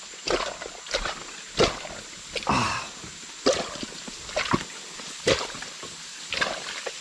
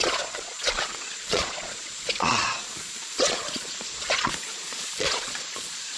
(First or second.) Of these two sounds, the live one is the first